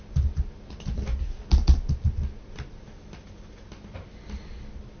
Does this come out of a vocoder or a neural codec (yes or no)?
no